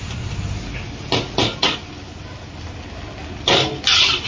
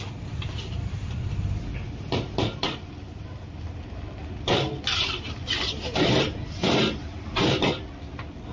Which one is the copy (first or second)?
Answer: second